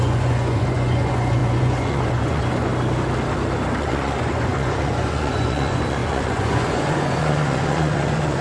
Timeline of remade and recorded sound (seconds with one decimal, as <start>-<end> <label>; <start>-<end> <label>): 0.0-2.7 remade; 2.7-3.8 recorded; 3.8-8.4 remade